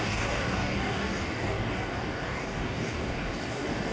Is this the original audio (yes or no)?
no